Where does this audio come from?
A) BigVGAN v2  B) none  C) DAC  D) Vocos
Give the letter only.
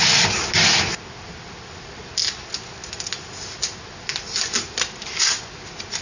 B